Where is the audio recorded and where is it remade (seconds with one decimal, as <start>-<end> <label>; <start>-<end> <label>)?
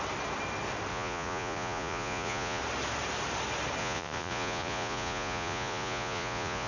0.0-0.9 recorded; 0.9-2.6 remade; 2.6-3.8 recorded; 3.8-6.7 remade